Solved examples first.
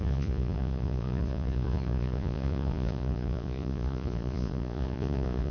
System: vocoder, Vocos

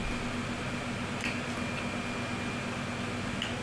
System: none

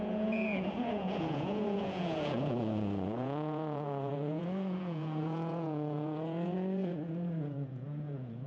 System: vocoder, Vocos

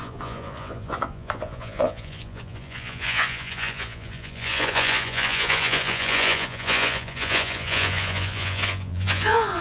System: vocoder, Vocos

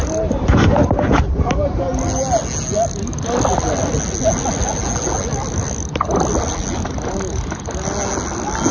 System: none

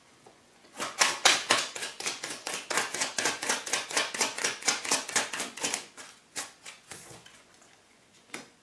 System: vocoder, Vocos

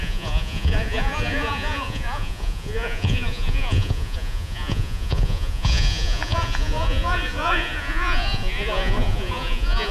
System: vocoder, Vocos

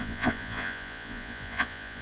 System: vocoder, Vocos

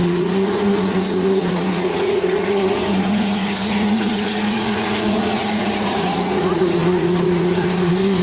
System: vocoder, Vocos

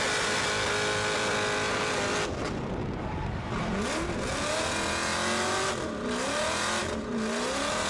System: none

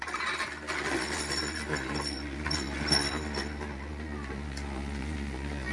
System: vocoder, Vocos